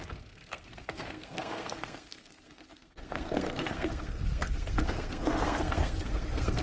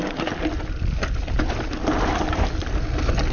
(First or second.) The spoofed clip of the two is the first